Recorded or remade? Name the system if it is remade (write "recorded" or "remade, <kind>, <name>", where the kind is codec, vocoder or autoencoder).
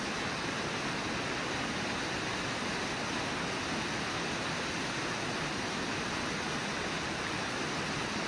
recorded